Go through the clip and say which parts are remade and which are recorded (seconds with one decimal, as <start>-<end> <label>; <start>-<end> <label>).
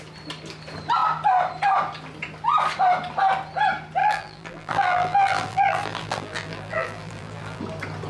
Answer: 0.0-4.0 recorded; 4.0-7.6 remade; 7.6-8.1 recorded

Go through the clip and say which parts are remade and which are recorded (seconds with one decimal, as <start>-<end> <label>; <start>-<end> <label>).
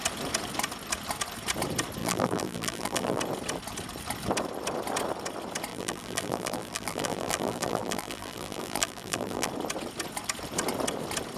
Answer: 0.0-2.0 recorded; 2.0-3.2 remade; 3.2-5.7 recorded; 5.7-9.5 remade; 9.5-11.4 recorded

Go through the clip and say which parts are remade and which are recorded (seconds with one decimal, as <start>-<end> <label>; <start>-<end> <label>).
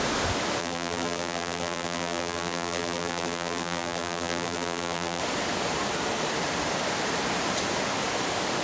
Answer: 0.0-0.6 recorded; 0.6-5.2 remade; 5.2-8.6 recorded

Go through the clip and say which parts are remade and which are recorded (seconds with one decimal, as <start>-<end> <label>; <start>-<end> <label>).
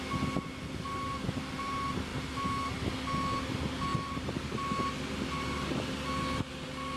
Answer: 0.0-7.0 recorded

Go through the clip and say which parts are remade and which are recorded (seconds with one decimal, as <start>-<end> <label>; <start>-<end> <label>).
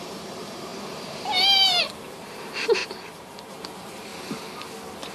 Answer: 0.0-4.1 remade; 4.1-5.1 recorded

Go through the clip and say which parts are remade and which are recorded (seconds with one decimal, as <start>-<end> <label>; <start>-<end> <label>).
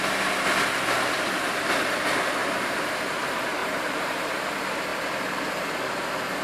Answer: 0.0-2.4 recorded; 2.4-2.9 remade; 2.9-3.6 recorded; 3.6-4.5 remade; 4.5-6.4 recorded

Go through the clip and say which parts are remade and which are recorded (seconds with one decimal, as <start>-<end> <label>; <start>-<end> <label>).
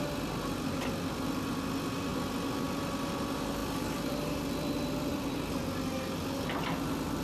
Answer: 0.0-3.6 recorded; 3.6-5.5 remade; 5.5-7.2 recorded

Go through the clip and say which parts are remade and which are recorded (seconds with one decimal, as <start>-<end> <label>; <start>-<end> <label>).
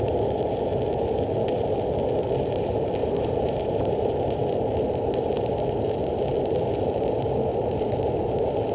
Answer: 0.0-3.0 recorded; 3.0-4.3 remade; 4.3-8.7 recorded